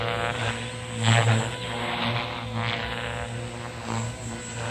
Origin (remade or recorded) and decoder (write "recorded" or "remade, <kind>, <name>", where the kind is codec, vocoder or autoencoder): recorded